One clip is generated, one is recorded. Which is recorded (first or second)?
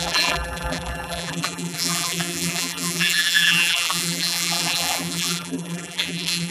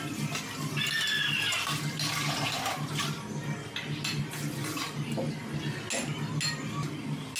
second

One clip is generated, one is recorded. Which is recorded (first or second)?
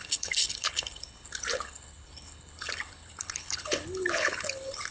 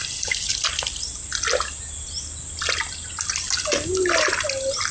second